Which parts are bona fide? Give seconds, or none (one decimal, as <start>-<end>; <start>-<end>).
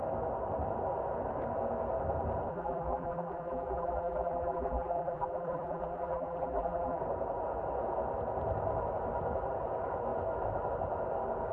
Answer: 0.0-2.5; 7.0-11.5